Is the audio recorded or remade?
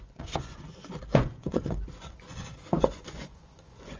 remade